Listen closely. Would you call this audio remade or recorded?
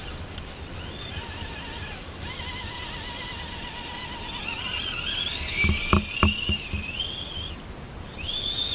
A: recorded